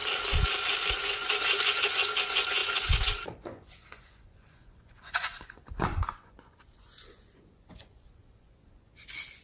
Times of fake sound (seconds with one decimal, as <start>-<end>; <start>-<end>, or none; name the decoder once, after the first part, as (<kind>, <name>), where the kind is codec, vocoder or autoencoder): 0.9-9.4 (vocoder, Vocos)